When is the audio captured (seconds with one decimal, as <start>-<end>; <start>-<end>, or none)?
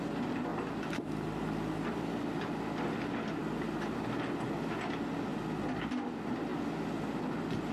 0.0-7.7